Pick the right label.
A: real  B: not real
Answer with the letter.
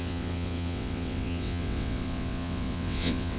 B